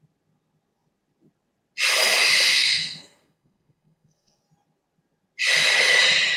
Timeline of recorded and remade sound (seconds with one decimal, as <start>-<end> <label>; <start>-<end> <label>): 0.0-2.5 recorded; 2.5-4.4 remade; 4.4-6.4 recorded